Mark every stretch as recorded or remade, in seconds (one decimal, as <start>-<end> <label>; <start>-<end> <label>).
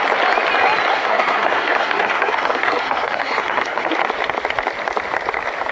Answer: 0.0-0.9 recorded; 0.9-3.9 remade; 3.9-5.7 recorded